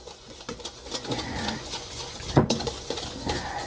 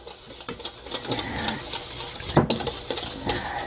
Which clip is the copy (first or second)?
first